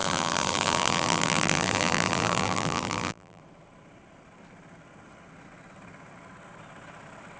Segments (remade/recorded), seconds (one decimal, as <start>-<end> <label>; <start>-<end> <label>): 0.0-3.4 remade; 3.4-7.4 recorded